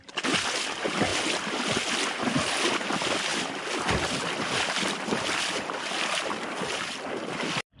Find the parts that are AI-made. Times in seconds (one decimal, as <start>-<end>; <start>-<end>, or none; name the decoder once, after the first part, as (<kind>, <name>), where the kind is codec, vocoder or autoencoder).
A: none